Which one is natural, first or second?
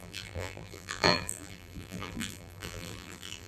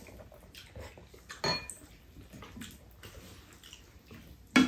second